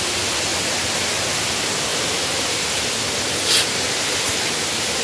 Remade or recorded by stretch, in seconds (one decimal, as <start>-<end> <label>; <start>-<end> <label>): 0.0-5.0 recorded